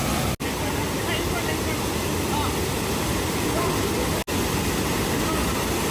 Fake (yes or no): no